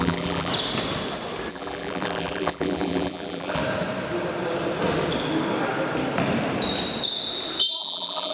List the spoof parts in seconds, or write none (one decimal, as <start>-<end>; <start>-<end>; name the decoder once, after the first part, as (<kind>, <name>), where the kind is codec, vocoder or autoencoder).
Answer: 0.0-0.5 (vocoder, BigVGAN v2); 1.5-3.6; 7.8-8.3